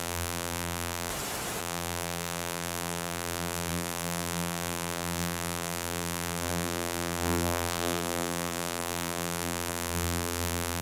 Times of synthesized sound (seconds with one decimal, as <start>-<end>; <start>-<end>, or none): 0.0-1.1; 1.6-10.8